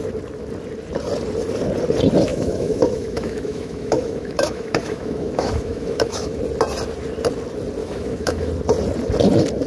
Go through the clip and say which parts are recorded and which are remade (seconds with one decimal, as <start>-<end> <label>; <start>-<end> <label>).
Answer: 0.0-2.3 recorded; 2.3-6.4 remade; 6.4-7.8 recorded; 7.8-8.5 remade; 8.5-9.7 recorded